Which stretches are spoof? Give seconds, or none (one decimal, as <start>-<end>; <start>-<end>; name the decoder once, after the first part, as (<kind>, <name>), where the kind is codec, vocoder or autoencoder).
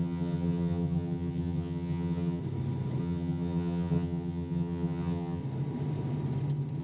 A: 0.0-2.4 (vocoder, HiFi-GAN); 3.0-5.4